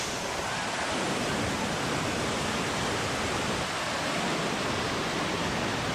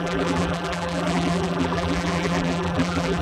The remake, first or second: second